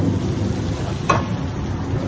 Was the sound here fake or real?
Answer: real